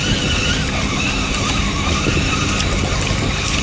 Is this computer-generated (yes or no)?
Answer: no